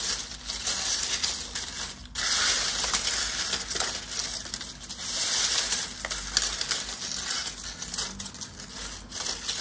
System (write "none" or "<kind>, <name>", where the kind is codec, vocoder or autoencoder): none